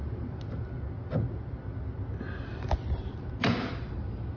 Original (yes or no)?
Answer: yes